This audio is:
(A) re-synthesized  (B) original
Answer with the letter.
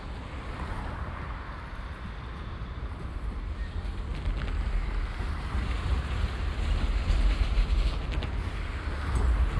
B